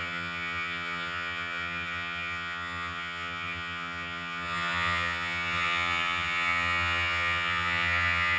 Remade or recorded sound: remade